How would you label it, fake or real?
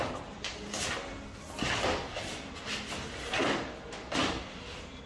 real